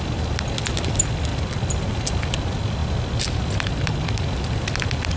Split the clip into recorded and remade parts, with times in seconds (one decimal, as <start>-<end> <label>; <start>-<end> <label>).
0.0-5.2 recorded